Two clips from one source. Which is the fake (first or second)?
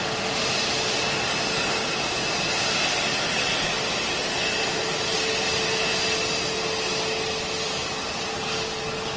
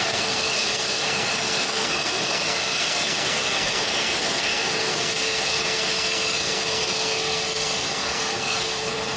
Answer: second